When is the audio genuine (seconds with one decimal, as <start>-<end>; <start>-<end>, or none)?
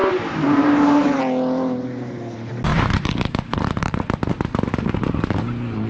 1.2-2.7